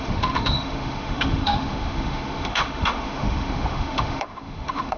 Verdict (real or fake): fake